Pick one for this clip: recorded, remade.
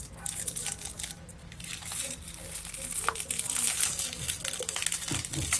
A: recorded